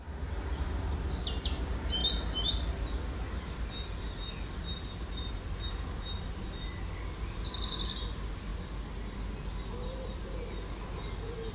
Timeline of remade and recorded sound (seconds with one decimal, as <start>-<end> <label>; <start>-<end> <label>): 0.0-11.5 recorded